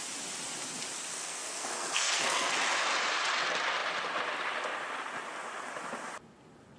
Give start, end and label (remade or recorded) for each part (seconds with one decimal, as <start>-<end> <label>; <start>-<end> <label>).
0.0-1.1 recorded; 1.1-2.5 remade; 2.5-6.8 recorded